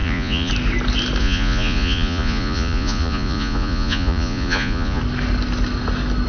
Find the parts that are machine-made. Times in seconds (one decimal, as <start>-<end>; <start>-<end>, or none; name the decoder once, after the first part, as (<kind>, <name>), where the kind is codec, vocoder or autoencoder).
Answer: 0.0-0.5 (vocoder, Vocos); 1.2-5.0